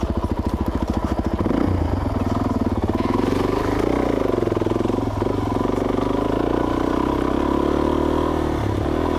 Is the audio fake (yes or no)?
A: no